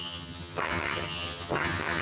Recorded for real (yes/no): no